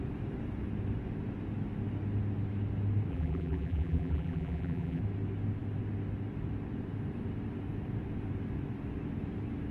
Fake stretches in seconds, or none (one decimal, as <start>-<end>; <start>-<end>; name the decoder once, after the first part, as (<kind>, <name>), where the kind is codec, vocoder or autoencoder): 3.1-5.0 (vocoder, BigVGAN v2)